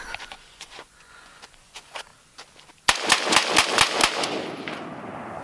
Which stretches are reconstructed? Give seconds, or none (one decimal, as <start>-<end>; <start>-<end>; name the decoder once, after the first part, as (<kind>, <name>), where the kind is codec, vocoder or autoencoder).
0.0-2.1 (vocoder, Vocos)